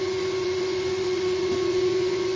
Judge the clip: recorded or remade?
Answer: remade